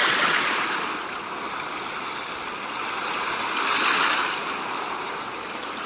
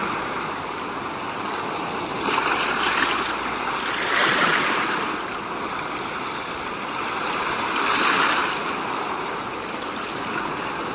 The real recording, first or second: first